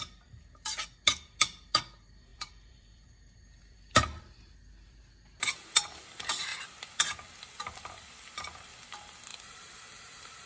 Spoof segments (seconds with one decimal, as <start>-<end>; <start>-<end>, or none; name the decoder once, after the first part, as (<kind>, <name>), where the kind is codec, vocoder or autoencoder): 2.3-5.0 (vocoder, BigVGAN v2); 9.3-10.5